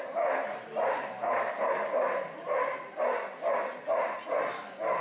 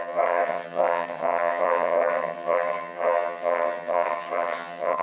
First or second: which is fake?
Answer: second